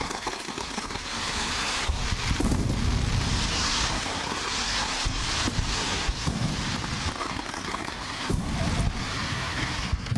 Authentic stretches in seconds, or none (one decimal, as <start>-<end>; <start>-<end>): 2.0-3.5; 5.2-5.7; 6.5-7.2; 8.5-9.0

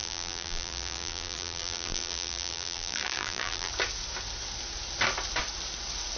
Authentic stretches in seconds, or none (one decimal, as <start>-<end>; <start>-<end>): 3.7-6.2

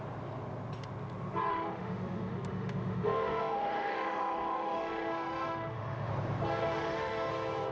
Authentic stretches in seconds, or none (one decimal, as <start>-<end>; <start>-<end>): 0.0-1.5; 6.1-6.6; 7.3-7.7

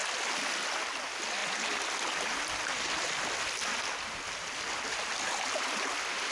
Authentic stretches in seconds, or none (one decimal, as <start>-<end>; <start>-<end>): 0.0-6.3